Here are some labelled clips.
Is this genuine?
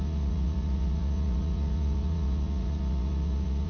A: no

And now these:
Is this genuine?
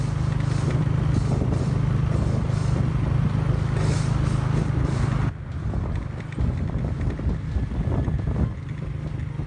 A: yes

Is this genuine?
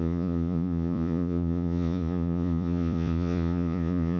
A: no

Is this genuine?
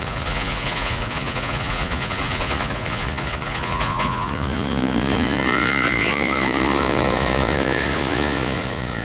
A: no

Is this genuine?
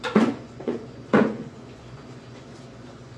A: no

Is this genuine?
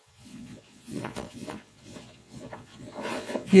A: no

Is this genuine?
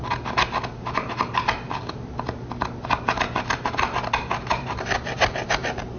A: yes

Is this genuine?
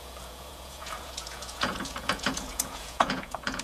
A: no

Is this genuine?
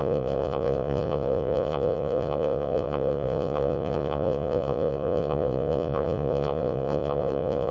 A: no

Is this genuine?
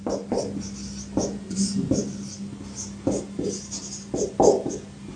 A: yes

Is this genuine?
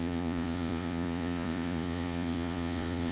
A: no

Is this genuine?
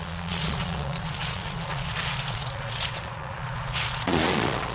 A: no